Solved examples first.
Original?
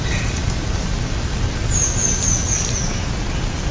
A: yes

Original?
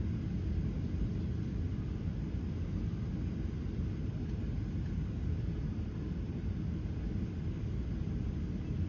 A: yes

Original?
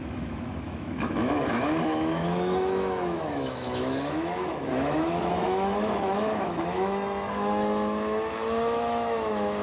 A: no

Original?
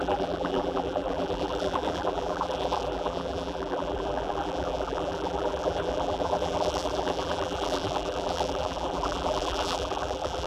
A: no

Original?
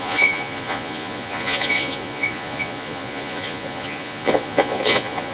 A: no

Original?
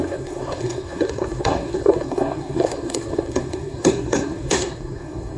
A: no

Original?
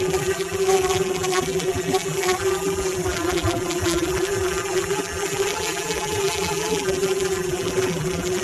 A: no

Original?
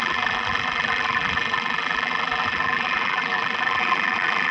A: no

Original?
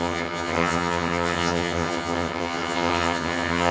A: no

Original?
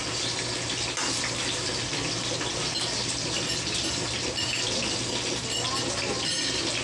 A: yes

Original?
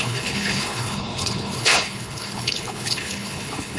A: no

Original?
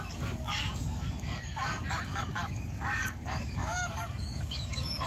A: no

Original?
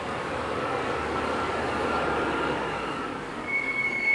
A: no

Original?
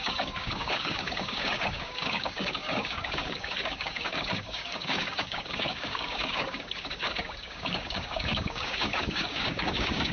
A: no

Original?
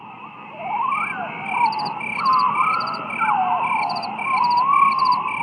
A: yes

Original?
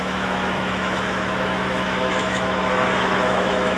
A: no